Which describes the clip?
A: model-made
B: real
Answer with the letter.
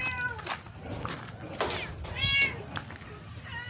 B